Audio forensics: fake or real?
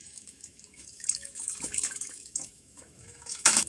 fake